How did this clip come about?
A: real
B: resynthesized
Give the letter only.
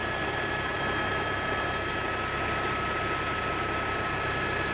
A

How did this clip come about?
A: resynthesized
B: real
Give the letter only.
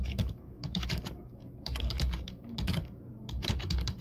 A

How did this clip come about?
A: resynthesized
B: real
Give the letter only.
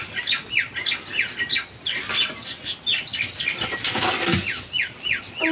B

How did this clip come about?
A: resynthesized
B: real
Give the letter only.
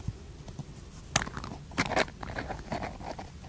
B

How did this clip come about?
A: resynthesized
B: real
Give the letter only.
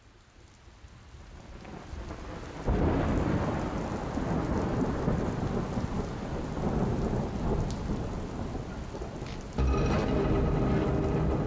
B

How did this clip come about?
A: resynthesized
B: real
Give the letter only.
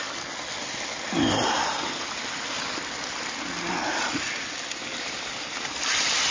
B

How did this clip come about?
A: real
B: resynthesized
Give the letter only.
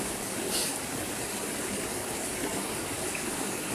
B